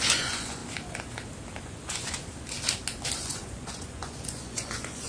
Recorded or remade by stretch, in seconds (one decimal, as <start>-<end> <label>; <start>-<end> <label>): 0.0-0.6 remade; 0.6-1.6 recorded; 1.6-2.2 remade; 2.2-3.2 recorded; 3.2-5.1 remade